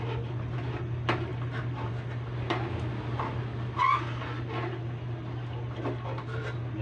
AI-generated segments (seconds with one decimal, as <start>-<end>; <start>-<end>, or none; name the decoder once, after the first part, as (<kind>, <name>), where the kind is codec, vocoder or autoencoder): 1.3-1.9 (vocoder, BigVGAN v2)